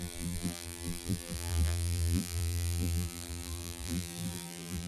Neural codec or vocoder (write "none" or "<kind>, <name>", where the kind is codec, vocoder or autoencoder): vocoder, BigVGAN v2